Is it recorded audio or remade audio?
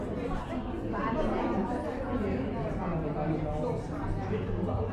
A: recorded